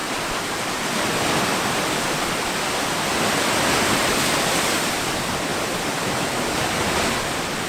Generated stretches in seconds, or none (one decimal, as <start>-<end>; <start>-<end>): 0.0-2.0